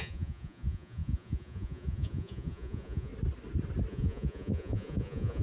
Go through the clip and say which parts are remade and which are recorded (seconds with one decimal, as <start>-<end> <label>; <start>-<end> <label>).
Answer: 0.0-3.1 remade; 3.1-3.9 recorded; 3.9-5.4 remade